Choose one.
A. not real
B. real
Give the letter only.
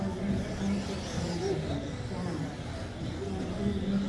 B